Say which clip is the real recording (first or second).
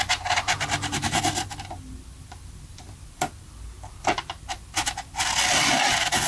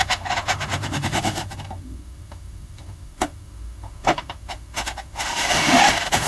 first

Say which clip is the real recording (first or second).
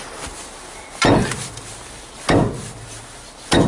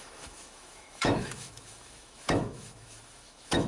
first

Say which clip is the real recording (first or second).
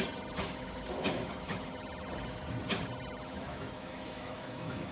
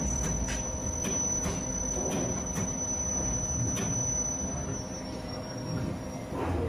second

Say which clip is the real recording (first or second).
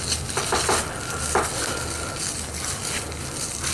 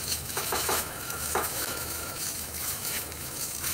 first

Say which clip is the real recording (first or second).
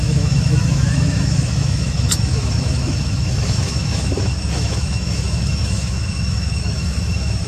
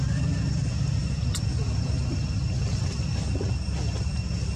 second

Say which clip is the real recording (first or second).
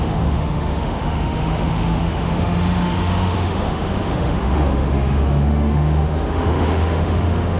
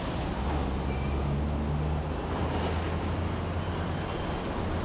second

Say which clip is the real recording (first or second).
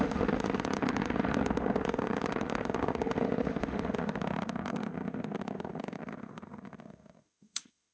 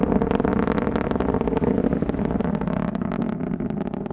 second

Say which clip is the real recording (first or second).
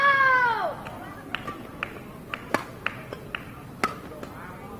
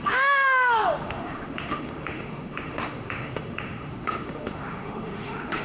first